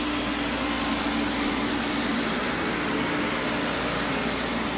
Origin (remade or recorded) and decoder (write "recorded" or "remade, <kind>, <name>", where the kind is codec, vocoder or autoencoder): recorded